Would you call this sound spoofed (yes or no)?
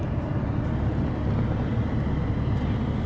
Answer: no